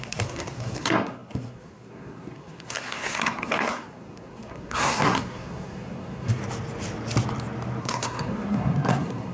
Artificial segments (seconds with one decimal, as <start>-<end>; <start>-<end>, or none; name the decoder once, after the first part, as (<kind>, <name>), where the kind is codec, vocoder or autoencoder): 0.0-6.4 (codec, SNAC); 7.8-9.3